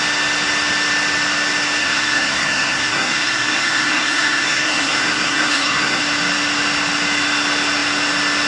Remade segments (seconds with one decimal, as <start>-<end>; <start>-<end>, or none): 1.8-6.0